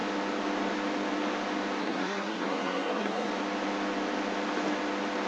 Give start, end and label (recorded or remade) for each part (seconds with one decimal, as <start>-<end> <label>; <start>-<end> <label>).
0.0-1.8 recorded; 1.8-3.3 remade; 3.3-5.3 recorded